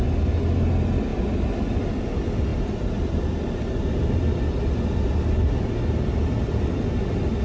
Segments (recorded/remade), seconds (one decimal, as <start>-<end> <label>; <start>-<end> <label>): 0.0-7.4 recorded